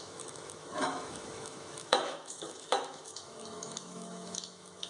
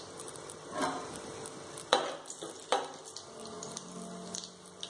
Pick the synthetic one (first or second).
first